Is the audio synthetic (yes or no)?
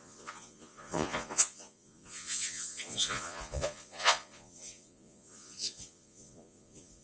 yes